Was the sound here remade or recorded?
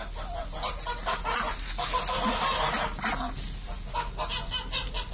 recorded